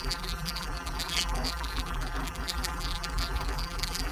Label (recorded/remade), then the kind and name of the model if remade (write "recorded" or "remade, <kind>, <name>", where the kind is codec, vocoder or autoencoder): remade, vocoder, BigVGAN v2